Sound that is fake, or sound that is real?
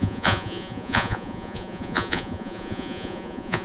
fake